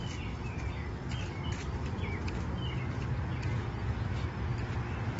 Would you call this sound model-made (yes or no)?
no